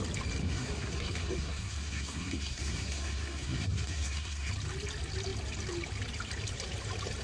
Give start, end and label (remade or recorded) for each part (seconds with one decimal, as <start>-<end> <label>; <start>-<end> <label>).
0.0-0.4 recorded; 0.4-4.5 remade; 4.5-7.2 recorded